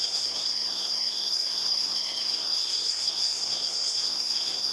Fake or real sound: fake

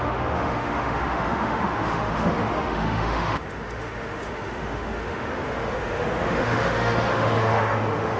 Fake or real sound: fake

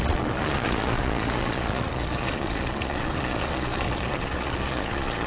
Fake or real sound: fake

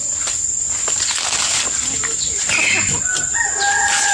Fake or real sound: real